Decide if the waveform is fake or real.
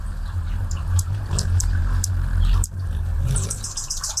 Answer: fake